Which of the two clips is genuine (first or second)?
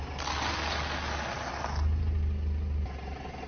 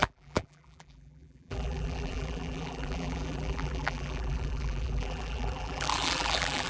first